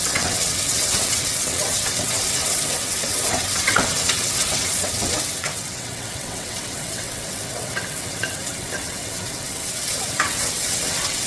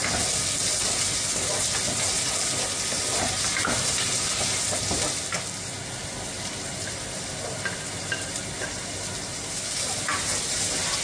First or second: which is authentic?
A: second